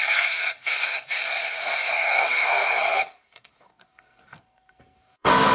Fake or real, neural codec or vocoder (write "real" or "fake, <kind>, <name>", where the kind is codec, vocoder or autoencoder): fake, codec, SNAC